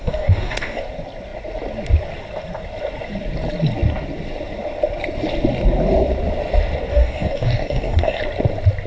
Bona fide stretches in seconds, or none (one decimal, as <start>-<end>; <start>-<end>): 0.8-6.9; 8.2-8.9

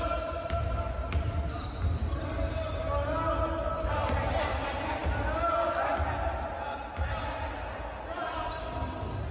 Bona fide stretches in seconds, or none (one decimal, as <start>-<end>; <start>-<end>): 0.0-9.3

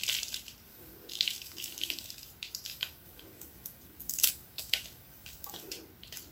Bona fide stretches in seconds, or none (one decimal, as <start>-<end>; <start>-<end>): 0.0-0.7; 2.3-2.7; 5.7-6.3

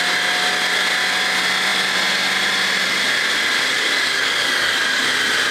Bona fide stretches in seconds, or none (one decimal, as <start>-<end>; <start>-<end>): 0.0-3.7; 5.0-5.5

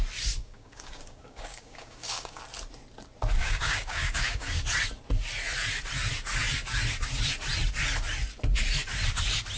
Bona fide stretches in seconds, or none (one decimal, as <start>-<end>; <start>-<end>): 0.0-0.4; 2.4-3.4; 4.6-9.6

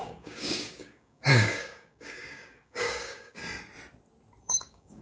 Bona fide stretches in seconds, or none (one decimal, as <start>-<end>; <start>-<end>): 3.4-4.4

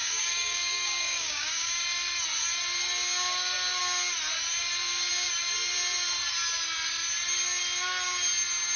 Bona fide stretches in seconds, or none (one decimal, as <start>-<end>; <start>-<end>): 1.7-8.8